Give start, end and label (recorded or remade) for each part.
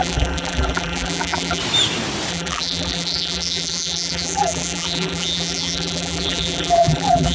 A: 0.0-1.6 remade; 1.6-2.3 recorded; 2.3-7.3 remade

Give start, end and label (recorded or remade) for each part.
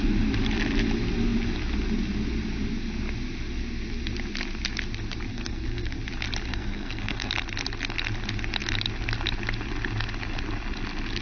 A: 0.0-5.3 recorded; 5.3-6.0 remade; 6.0-6.5 recorded; 6.5-7.3 remade; 7.3-11.2 recorded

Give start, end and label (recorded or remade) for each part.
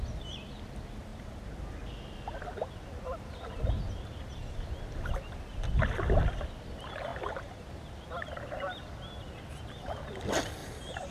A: 0.0-1.1 recorded; 1.1-1.9 remade; 1.9-7.1 recorded; 7.1-7.7 remade; 7.7-10.6 recorded; 10.6-11.1 remade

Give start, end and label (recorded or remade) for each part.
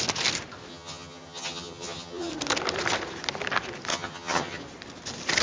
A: 0.0-0.7 recorded; 0.7-2.3 remade; 2.3-3.9 recorded; 3.9-4.6 remade; 4.6-5.4 recorded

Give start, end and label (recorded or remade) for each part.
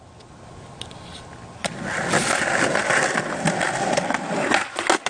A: 0.0-5.1 recorded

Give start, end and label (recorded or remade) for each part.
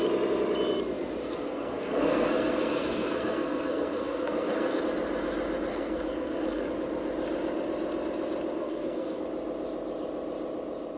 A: 0.0-1.2 recorded; 1.2-4.8 remade; 4.8-5.7 recorded; 5.7-6.7 remade; 6.7-8.6 recorded; 8.6-9.2 remade; 9.2-11.0 recorded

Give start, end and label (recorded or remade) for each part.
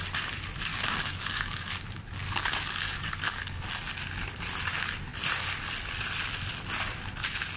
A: 0.0-0.7 recorded; 0.7-3.6 remade; 3.6-7.6 recorded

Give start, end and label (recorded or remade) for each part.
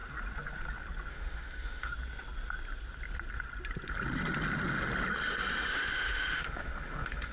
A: 0.0-1.1 recorded; 1.1-1.9 remade; 1.9-5.7 recorded; 5.7-7.3 remade